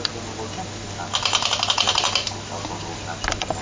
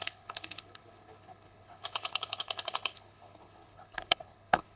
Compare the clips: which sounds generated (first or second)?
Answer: second